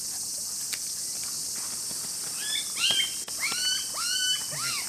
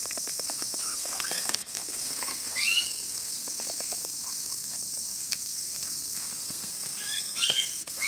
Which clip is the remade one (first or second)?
second